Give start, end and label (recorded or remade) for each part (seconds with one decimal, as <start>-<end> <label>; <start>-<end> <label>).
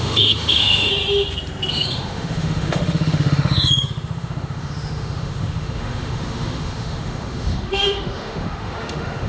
0.0-0.9 remade; 0.9-1.7 recorded; 1.7-9.3 remade